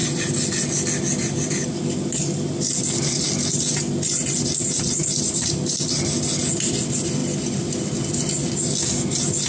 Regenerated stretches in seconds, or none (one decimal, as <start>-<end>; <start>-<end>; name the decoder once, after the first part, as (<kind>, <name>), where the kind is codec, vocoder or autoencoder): none